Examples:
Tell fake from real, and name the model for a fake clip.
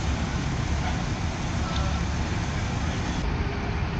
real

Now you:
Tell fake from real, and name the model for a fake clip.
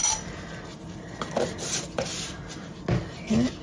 real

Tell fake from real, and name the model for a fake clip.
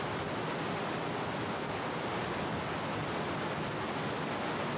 real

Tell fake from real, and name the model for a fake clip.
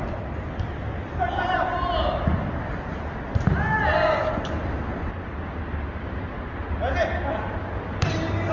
real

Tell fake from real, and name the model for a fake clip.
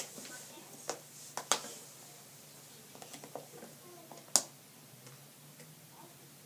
real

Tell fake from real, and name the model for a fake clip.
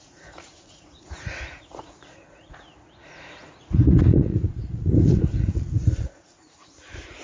fake, vocoder, Vocos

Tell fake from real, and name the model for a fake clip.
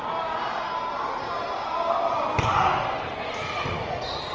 real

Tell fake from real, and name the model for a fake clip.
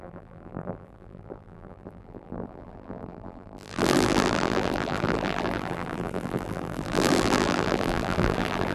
fake, vocoder, BigVGAN v2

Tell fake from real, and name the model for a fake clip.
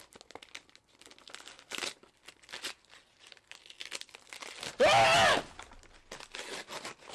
real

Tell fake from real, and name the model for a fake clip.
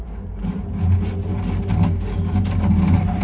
real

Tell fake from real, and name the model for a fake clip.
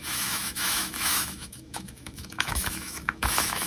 fake, autoencoder, DAC-VAE